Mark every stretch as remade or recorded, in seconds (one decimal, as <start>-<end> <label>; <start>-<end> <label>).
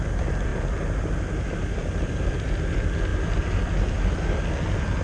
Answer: 0.0-5.0 recorded